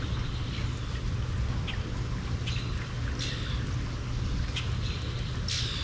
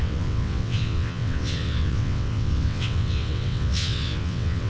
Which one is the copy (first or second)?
second